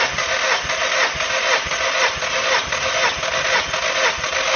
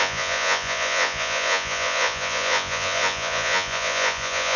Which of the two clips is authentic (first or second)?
first